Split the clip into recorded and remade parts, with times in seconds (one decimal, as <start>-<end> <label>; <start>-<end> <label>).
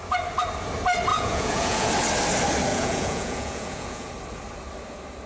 0.0-1.1 recorded; 1.1-1.9 remade; 1.9-2.7 recorded; 2.7-4.1 remade; 4.1-5.3 recorded